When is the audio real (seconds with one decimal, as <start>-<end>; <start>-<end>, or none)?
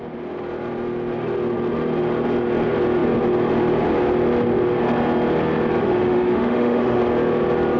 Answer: 0.0-5.8; 7.0-7.8